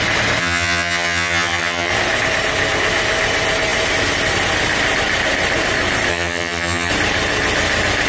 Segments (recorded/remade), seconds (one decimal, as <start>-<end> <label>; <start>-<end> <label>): 0.0-0.4 recorded; 0.4-1.9 remade; 1.9-6.1 recorded; 6.1-6.9 remade; 6.9-8.1 recorded